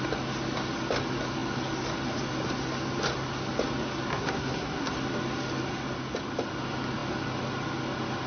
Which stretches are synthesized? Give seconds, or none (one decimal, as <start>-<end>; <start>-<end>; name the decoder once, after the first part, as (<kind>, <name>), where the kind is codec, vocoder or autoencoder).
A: 4.1-4.9 (codec, SNAC)

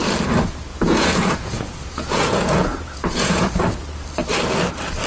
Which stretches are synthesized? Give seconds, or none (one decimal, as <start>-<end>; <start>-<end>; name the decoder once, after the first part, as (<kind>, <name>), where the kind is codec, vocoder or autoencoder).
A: 0.7-3.8 (vocoder, Vocos)

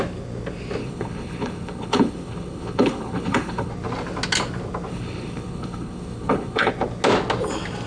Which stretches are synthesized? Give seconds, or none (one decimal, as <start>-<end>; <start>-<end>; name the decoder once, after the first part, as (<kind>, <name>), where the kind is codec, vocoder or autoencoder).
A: 0.8-3.7 (codec, HILCodec); 4.9-6.7

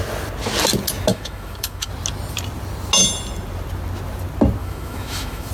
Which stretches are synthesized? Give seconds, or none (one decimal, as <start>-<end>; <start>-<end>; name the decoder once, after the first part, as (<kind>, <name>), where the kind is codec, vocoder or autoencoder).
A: 1.1-1.9 (autoencoder, DAC-VAE); 4.6-5.5

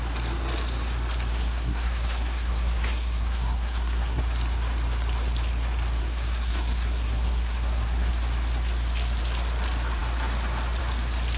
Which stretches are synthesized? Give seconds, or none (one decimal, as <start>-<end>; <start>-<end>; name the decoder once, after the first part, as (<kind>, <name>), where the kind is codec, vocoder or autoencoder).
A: 1.3-4.2 (codec, SNAC); 6.0-8.1

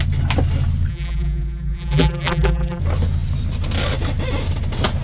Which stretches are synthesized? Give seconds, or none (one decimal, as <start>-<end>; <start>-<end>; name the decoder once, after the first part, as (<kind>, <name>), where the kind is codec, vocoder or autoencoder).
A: 0.9-2.8 (vocoder, BigVGAN v2)